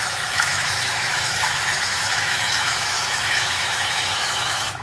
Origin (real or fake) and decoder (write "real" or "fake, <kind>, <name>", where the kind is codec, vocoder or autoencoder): fake, autoencoder, DAC-VAE